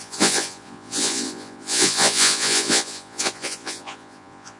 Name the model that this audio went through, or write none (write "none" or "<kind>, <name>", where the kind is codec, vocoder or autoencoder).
vocoder, Vocos